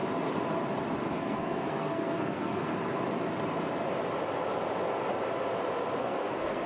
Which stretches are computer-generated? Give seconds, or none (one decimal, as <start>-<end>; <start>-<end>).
1.2-2.7; 6.0-6.7